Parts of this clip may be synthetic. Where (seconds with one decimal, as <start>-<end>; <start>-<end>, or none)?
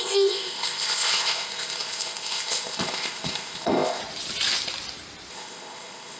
0.0-4.0; 5.3-6.2